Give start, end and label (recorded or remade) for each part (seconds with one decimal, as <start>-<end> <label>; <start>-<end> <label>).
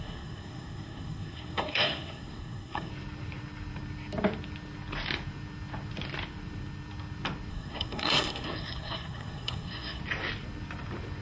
0.0-2.9 remade; 2.9-7.5 recorded; 7.5-10.0 remade; 10.0-11.2 recorded